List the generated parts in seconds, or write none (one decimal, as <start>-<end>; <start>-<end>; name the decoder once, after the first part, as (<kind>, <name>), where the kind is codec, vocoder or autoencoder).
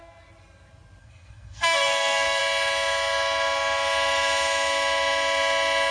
1.0-2.4 (codec, SNAC)